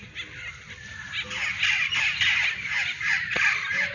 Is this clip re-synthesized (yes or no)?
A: no